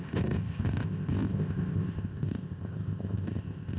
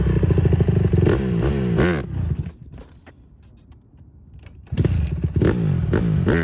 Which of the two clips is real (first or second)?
second